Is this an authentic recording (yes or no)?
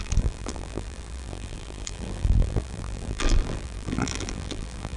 no